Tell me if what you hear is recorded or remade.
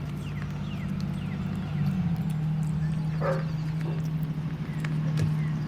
recorded